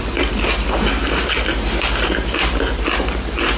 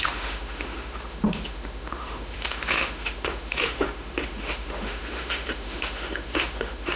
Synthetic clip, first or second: second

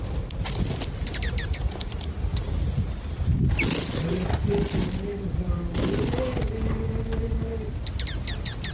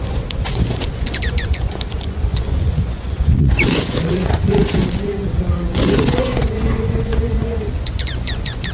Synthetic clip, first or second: second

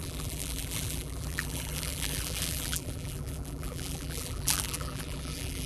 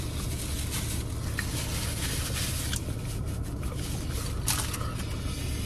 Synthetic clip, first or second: first